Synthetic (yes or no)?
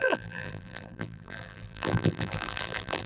yes